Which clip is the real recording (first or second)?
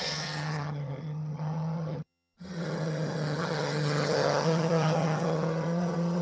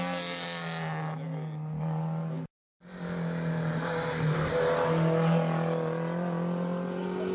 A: second